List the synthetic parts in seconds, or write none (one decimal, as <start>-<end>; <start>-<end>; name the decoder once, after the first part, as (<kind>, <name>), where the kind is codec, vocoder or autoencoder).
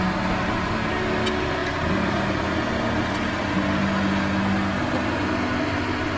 1.6-2.1 (vocoder, BigVGAN v2)